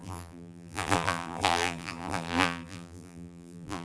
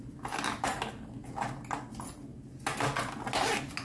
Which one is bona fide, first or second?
second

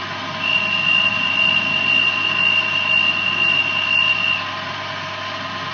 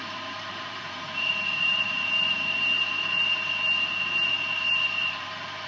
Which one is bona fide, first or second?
first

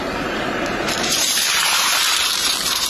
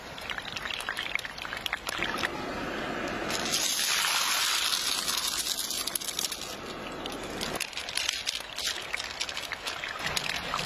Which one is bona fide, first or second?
second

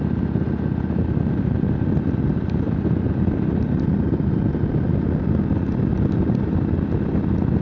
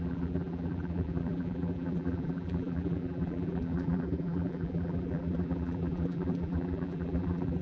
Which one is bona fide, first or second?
first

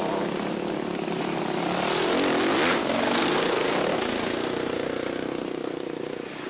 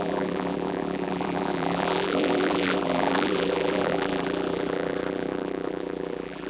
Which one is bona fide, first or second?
first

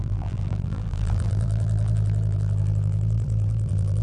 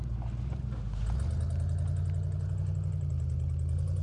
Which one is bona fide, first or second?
second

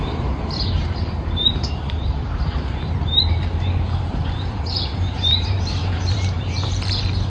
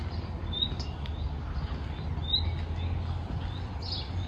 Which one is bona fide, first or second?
second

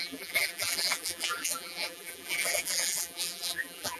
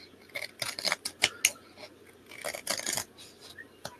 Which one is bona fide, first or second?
second